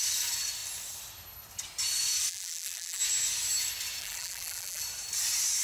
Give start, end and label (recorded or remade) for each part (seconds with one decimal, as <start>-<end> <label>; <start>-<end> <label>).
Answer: 0.0-2.3 recorded; 2.3-3.0 remade; 3.0-4.0 recorded; 4.0-4.8 remade; 4.8-5.6 recorded